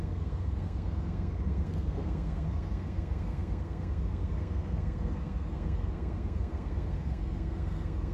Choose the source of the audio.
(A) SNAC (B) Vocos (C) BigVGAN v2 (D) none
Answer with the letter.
A